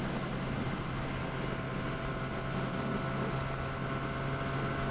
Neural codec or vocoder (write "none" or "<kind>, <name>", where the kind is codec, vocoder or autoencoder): none